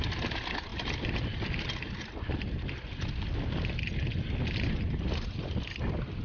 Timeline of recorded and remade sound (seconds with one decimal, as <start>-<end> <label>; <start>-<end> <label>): 0.0-6.2 recorded